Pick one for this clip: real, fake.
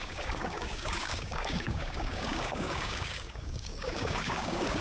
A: fake